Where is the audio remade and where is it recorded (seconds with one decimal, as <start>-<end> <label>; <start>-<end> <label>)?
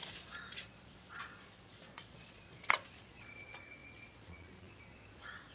0.0-5.5 remade